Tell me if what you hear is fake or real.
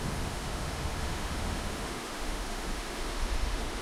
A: fake